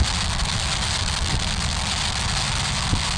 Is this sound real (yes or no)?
yes